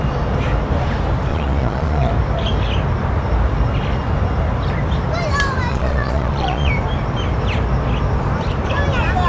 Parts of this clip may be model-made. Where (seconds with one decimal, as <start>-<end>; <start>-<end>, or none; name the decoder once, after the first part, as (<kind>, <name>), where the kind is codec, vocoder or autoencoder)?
1.3-2.1 (vocoder, Vocos); 5.7-6.7